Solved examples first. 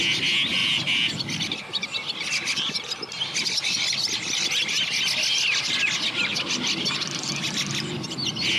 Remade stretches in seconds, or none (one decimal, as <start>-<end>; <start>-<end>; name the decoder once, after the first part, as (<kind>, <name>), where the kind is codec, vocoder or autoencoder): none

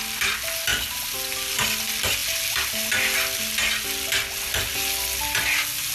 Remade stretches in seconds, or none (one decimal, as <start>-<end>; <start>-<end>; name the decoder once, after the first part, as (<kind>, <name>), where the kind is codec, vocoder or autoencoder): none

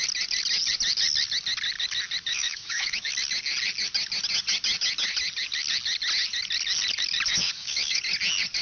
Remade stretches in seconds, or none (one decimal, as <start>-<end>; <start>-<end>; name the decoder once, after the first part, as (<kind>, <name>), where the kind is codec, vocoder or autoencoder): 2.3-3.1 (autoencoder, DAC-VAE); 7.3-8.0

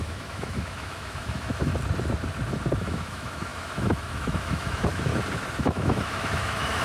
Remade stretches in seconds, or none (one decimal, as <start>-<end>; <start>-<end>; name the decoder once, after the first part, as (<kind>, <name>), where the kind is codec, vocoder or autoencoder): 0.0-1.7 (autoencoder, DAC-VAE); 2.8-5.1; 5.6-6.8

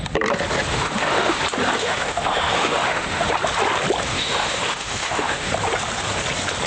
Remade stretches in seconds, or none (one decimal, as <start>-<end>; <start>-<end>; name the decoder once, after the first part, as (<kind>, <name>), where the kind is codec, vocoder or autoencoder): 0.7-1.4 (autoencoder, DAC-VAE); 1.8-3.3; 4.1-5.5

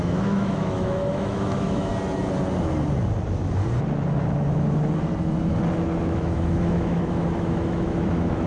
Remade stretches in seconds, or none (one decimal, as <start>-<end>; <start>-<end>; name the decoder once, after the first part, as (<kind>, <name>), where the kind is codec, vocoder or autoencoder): 0.0-1.9 (autoencoder, DAC-VAE); 6.0-8.5

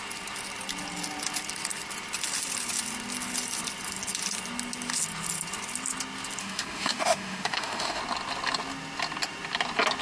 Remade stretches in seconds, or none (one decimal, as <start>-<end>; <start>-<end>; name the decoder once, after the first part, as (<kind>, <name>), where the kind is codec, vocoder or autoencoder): 6.4-8.0 (autoencoder, DAC-VAE)

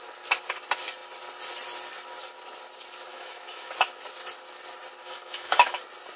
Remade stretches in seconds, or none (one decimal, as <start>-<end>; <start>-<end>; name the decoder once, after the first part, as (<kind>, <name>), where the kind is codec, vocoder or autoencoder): 3.1-3.7 (autoencoder, DAC-VAE); 5.0-5.8